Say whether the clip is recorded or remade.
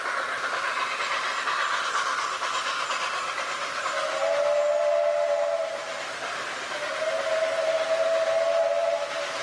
recorded